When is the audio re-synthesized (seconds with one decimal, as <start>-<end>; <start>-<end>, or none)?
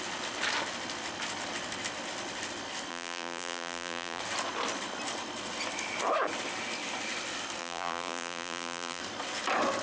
2.9-4.2; 7.6-9.0